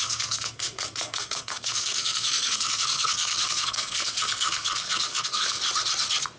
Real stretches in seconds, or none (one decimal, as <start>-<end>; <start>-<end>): 5.6-6.4